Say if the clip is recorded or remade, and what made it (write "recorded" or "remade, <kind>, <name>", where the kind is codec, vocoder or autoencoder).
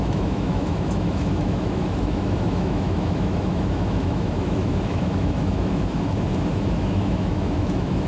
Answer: remade, autoencoder, DAC-VAE